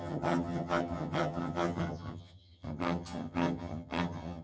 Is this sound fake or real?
fake